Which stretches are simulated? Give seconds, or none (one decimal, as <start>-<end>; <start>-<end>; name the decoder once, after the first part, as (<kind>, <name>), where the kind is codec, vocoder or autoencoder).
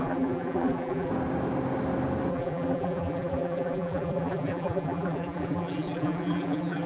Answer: 0.0-1.1 (vocoder, BigVGAN v2); 2.3-6.9